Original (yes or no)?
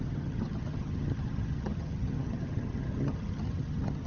no